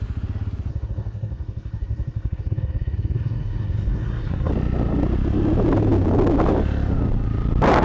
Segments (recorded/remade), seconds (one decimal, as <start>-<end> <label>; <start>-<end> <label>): 0.0-0.7 recorded; 0.7-4.5 remade; 4.5-7.8 recorded

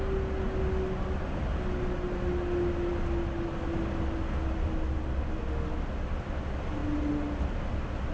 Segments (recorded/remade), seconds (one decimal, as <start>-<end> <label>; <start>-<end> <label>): 0.0-8.1 recorded

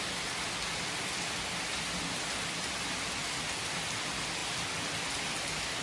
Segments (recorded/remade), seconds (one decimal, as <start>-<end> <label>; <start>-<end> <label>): 0.0-5.8 recorded